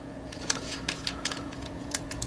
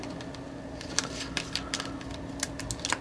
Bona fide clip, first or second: second